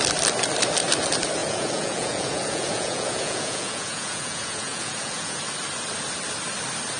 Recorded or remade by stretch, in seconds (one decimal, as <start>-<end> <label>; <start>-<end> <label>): 0.0-1.4 recorded; 1.4-5.4 remade; 5.4-7.0 recorded